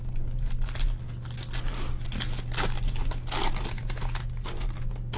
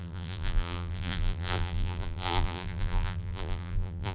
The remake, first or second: second